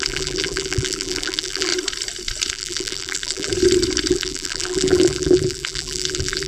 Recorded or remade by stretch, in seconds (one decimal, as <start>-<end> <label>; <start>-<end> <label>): 0.0-1.7 remade; 1.7-2.5 recorded; 2.5-3.5 remade; 3.5-4.1 recorded; 4.1-6.5 remade